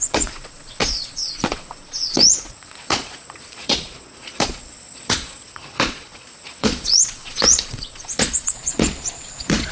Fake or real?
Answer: fake